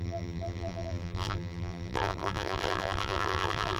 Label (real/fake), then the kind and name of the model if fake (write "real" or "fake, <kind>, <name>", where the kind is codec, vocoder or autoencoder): fake, vocoder, BigVGAN v2